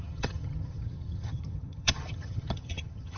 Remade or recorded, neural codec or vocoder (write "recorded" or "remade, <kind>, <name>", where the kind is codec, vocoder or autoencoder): remade, vocoder, HiFi-GAN